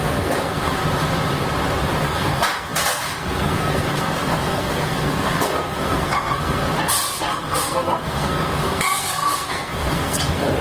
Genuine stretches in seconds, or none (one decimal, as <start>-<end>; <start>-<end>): 0.8-2.0; 6.6-7.2